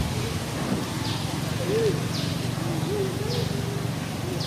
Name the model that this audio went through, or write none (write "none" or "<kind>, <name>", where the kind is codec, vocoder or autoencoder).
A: none